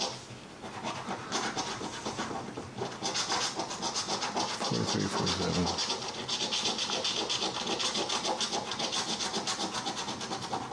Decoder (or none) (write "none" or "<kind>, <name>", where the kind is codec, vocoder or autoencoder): none